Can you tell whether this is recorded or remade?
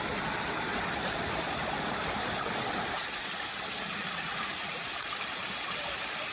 recorded